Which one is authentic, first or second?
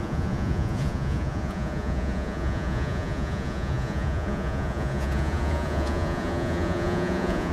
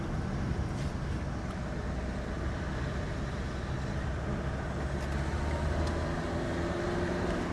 second